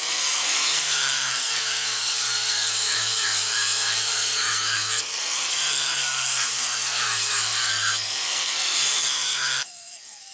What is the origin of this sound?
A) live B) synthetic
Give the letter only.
B